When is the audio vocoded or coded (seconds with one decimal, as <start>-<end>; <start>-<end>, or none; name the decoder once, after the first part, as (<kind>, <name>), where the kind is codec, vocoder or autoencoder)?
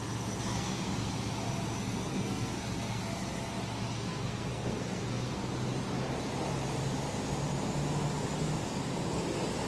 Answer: 0.5-1.1 (codec, SNAC); 1.8-3.0; 3.9-5.5